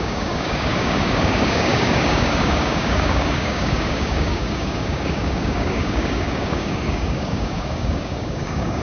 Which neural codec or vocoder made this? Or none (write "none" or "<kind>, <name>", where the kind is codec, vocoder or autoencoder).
codec, DAC